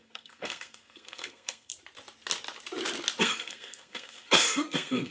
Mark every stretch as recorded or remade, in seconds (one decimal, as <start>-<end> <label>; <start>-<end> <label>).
0.0-1.7 remade; 1.7-3.2 recorded; 3.2-5.1 remade